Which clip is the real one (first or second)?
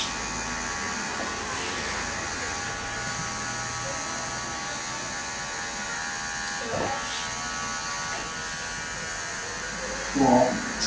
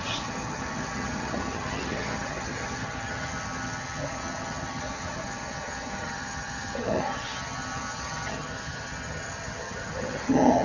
first